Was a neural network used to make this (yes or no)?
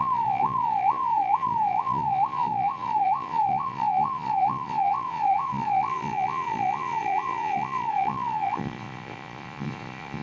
yes